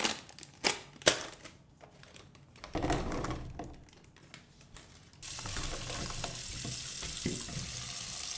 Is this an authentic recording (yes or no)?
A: yes